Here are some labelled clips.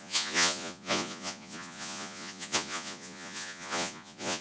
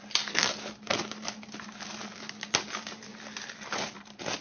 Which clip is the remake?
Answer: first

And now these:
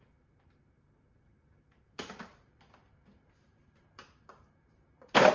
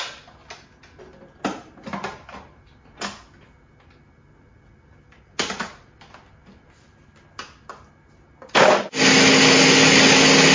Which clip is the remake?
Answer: first